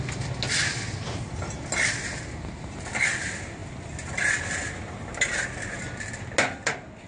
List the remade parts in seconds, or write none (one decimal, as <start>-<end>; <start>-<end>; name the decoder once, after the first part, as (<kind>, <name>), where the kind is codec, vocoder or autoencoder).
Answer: none